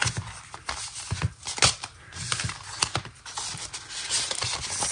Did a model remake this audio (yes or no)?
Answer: no